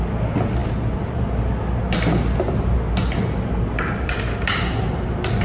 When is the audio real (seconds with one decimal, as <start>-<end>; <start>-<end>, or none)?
0.0-5.4